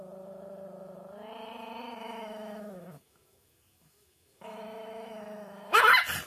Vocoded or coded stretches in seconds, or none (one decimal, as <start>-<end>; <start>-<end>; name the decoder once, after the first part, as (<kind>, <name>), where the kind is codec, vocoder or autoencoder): 2.0-5.8 (autoencoder, DAC-VAE)